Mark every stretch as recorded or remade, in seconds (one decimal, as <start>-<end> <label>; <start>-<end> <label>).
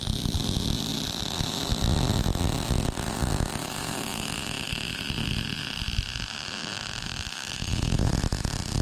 0.0-3.6 recorded; 3.6-4.9 remade; 4.9-6.6 recorded; 6.6-8.1 remade; 8.1-8.8 recorded